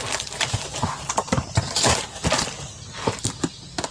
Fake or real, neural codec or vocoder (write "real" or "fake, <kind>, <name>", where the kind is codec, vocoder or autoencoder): real